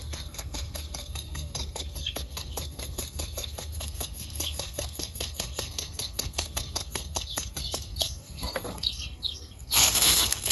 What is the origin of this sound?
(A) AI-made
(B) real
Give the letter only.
A